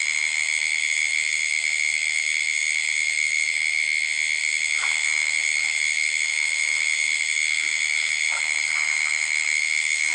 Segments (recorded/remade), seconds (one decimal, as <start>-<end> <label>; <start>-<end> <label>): 0.0-3.8 remade; 3.8-4.4 recorded; 4.4-10.1 remade